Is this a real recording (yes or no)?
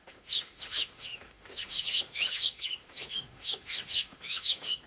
no